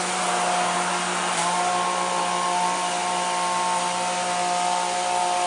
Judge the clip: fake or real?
real